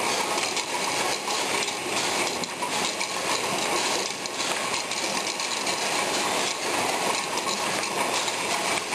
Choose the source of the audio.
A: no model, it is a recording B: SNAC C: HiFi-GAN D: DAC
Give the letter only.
A